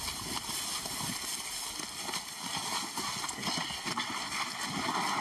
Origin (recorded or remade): recorded